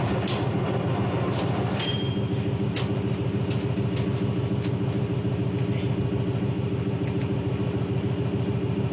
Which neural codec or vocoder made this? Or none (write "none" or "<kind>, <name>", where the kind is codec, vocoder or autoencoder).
none